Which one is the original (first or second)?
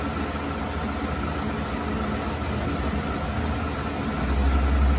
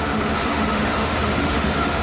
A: first